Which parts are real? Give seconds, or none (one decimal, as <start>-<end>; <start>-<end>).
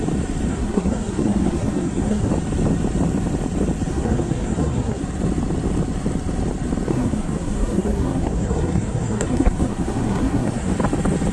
0.0-0.5; 2.3-3.9; 5.0-6.9; 10.7-11.3